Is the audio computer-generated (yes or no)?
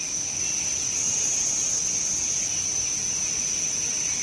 no